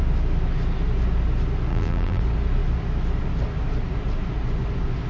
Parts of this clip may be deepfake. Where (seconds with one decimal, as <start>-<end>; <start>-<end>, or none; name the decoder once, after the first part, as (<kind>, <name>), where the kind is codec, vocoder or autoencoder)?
1.7-2.2 (vocoder, BigVGAN v2)